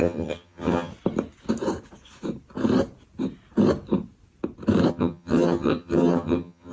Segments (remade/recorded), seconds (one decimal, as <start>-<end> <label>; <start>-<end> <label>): 0.0-0.9 remade; 0.9-4.9 recorded; 4.9-6.7 remade